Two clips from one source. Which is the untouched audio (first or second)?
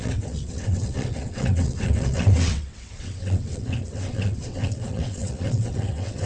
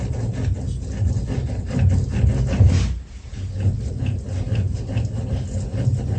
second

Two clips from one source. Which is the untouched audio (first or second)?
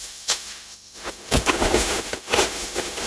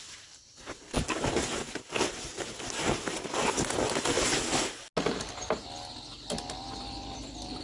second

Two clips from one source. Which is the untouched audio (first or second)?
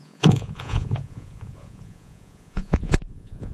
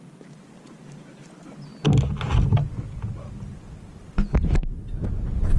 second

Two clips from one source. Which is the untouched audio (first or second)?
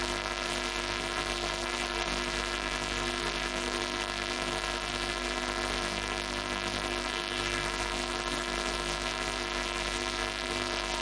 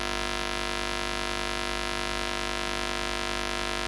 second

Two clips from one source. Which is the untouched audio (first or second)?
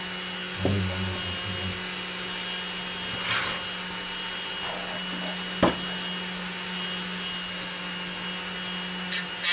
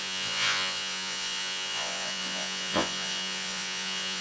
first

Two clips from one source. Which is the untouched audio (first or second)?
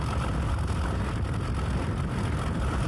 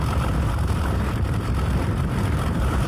first